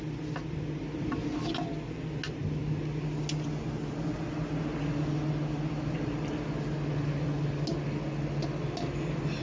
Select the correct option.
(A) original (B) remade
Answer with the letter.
A